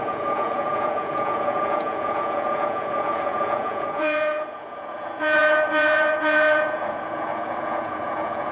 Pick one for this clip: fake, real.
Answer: fake